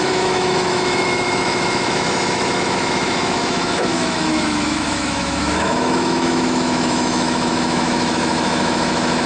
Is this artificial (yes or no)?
yes